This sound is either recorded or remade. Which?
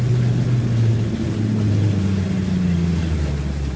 recorded